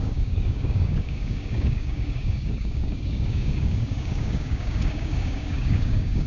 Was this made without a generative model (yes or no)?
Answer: no